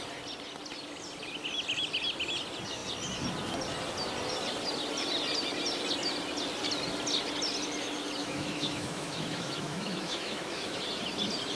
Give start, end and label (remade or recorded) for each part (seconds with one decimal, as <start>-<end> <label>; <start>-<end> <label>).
0.0-8.2 recorded; 8.2-10.8 remade; 10.8-11.5 recorded